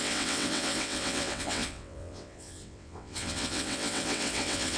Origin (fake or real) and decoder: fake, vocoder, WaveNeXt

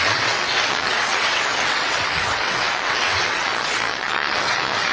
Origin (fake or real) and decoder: fake, vocoder, WaveNeXt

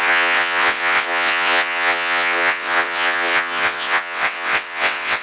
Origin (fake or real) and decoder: fake, vocoder, WaveNeXt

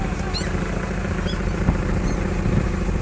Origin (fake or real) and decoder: real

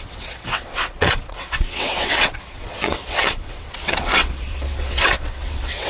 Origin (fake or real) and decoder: fake, vocoder, WaveNeXt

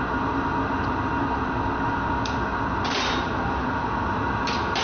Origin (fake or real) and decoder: real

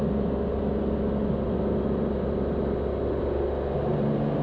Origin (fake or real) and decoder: real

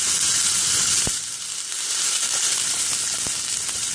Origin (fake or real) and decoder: real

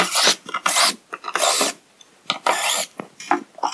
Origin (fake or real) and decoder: real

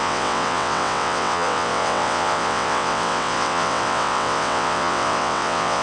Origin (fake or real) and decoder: fake, vocoder, WaveNeXt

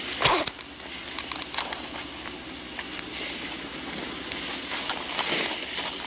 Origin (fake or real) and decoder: real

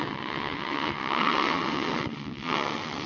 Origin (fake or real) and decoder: fake, vocoder, WaveNeXt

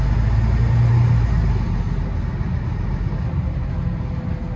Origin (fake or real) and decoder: real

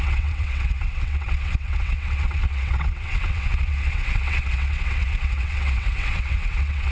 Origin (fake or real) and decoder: fake, vocoder, WaveNeXt